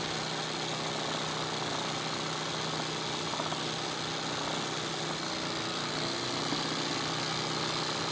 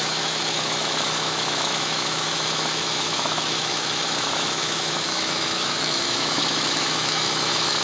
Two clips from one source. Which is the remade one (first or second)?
second